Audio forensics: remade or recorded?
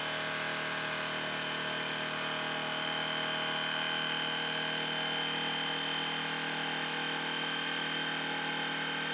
recorded